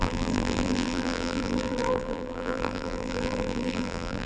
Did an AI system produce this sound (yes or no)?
yes